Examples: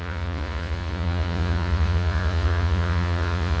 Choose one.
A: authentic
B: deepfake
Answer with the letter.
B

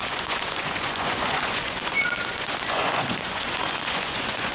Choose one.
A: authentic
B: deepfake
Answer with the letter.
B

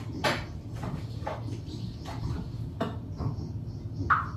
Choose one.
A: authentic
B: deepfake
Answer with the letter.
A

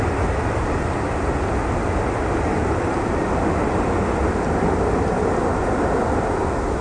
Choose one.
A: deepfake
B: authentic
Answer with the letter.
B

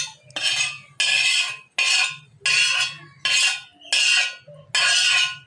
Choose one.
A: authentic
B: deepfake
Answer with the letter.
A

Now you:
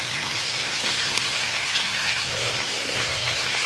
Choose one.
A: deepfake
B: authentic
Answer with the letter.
A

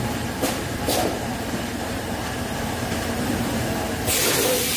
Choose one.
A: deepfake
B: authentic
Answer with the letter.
A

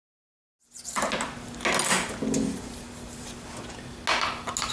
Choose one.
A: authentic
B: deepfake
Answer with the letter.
A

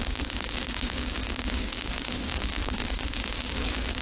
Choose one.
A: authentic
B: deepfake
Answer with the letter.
B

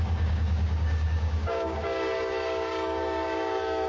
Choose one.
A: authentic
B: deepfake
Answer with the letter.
B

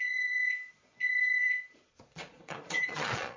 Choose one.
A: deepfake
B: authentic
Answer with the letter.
A